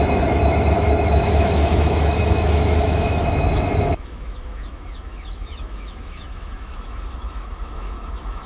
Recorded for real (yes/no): no